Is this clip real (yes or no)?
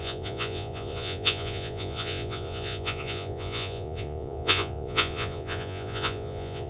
no